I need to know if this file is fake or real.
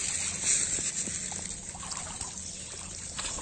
real